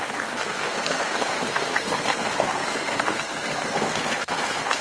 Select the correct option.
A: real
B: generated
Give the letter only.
B